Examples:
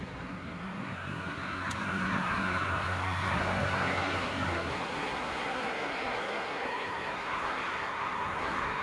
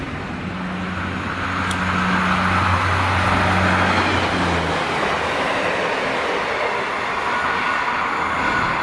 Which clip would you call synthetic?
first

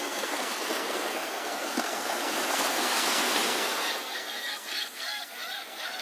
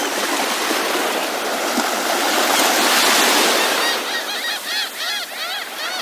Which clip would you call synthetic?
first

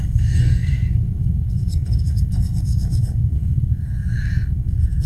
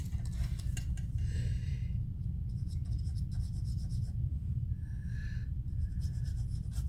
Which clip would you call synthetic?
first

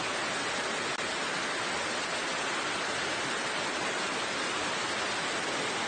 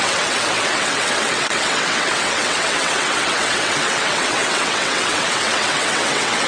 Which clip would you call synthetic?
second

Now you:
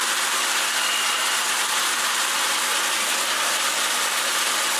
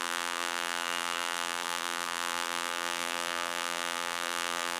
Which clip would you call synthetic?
second